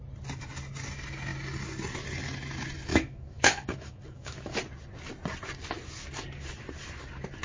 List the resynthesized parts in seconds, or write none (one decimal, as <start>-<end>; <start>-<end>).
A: 2.9-4.5